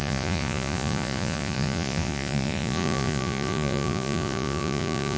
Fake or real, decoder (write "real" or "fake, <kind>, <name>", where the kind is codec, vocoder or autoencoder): fake, vocoder, Vocos